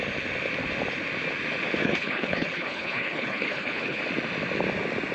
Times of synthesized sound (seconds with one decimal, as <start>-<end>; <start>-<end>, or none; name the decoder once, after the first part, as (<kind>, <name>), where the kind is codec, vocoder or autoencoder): 1.8-4.0 (codec, HILCodec)